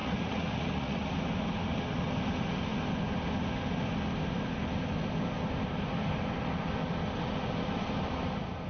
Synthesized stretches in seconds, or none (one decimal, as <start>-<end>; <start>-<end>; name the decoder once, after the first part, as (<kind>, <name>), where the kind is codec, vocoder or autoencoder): 0.0-1.1 (vocoder, Vocos)